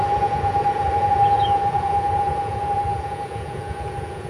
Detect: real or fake fake